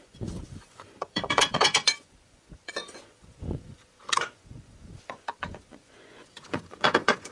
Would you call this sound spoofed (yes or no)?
yes